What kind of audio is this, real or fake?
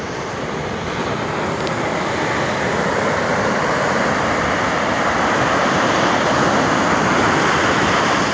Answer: real